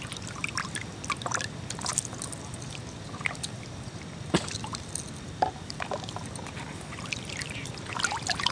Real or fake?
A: real